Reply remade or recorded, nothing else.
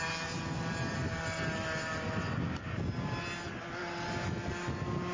recorded